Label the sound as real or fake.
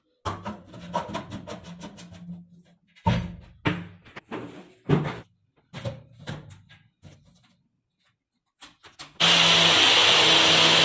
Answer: real